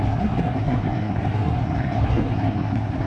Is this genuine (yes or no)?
no